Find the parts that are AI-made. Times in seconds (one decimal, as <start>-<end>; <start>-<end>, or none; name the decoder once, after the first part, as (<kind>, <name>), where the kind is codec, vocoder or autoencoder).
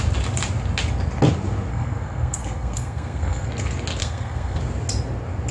1.7-3.5 (codec, SNAC); 4.0-4.6